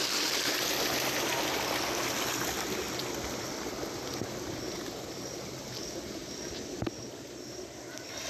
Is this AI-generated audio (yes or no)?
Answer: no